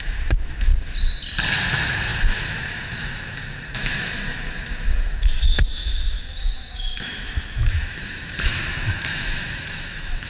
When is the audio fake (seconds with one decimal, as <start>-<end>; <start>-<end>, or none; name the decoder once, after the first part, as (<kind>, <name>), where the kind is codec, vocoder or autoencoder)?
0.0-0.7 (autoencoder, DAC-VAE); 1.7-10.3